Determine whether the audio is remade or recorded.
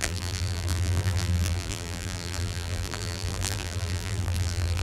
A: remade